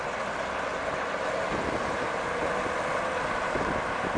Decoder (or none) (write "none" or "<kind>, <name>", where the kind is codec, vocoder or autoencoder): none